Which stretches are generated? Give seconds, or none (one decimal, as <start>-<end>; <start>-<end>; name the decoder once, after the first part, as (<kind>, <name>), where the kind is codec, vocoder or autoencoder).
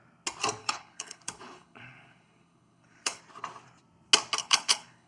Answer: 0.6-3.2 (codec, HILCodec); 4.4-5.1